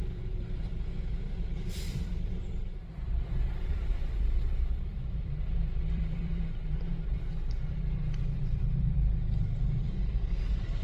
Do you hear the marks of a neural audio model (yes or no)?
yes